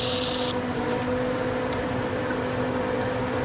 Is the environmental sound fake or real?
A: real